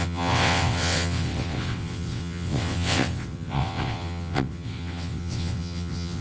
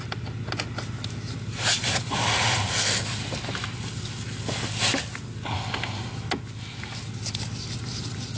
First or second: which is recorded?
second